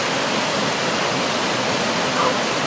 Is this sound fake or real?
real